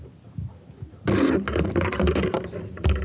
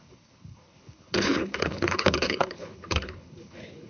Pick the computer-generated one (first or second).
second